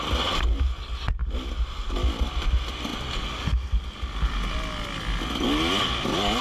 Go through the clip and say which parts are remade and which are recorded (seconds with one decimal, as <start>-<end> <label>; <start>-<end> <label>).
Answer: 0.0-6.4 recorded